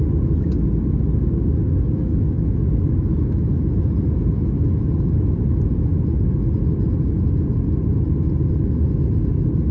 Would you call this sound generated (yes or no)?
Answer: no